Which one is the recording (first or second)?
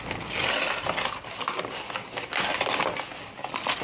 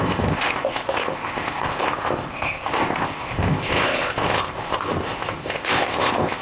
first